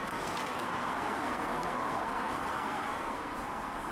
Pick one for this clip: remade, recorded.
remade